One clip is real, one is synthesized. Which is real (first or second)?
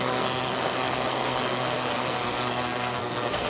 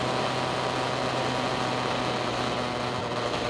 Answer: second